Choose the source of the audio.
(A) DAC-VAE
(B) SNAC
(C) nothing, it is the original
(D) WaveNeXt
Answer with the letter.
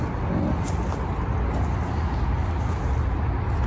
C